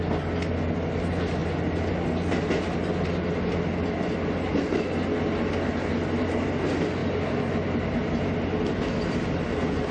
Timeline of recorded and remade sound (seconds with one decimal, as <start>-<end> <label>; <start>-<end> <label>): 0.0-9.9 recorded

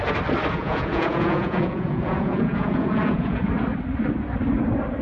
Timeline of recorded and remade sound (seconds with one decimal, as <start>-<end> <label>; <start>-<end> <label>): 0.0-0.6 recorded; 0.6-3.5 remade; 3.5-5.0 recorded

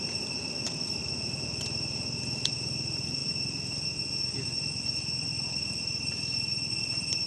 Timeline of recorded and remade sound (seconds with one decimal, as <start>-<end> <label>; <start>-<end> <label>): 0.0-7.3 recorded

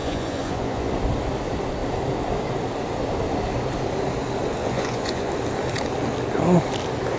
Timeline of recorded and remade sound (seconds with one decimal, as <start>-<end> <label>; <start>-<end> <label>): 0.0-0.9 remade; 0.9-4.6 recorded; 4.6-5.3 remade; 5.3-7.2 recorded